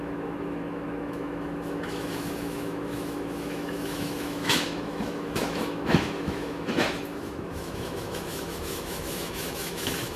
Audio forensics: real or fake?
fake